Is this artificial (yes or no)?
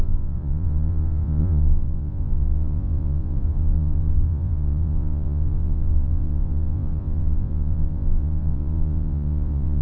yes